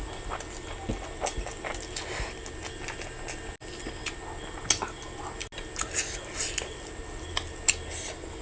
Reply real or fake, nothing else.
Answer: real